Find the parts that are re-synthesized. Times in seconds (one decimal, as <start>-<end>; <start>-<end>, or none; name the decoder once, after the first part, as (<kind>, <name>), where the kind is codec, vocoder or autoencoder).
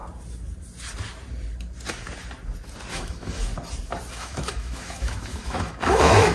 2.9-3.5 (autoencoder, DAC-VAE); 4.1-6.3